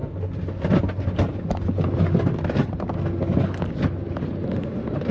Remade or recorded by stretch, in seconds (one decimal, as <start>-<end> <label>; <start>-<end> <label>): 0.0-5.1 recorded